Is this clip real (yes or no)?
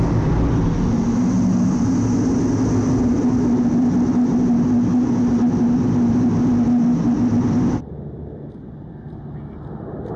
yes